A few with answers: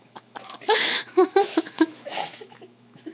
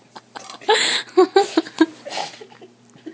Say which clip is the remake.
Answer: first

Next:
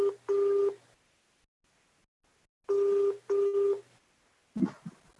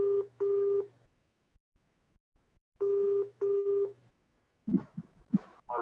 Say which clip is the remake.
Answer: second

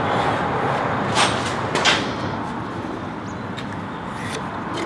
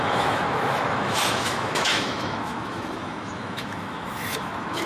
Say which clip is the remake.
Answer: second